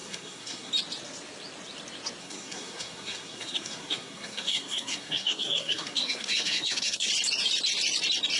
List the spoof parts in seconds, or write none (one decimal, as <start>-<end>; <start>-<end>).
0.0-0.7; 2.2-7.1